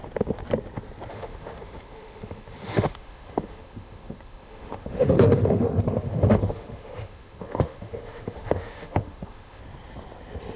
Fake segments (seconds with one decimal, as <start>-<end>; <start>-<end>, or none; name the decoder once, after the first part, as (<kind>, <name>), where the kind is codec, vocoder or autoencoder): 1.1-9.6 (autoencoder, DAC-VAE)